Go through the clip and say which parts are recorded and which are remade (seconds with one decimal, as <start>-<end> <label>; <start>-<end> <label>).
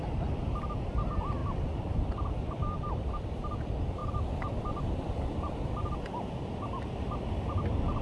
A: 0.0-1.4 recorded; 1.4-3.1 remade; 3.1-4.0 recorded; 4.0-8.0 remade